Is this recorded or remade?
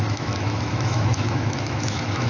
remade